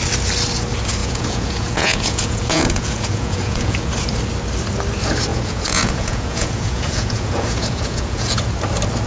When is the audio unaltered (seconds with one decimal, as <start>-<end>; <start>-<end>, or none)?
0.0-1.0; 3.9-5.3; 8.4-9.1